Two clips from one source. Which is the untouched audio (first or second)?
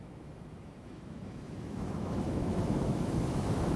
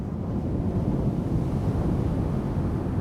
second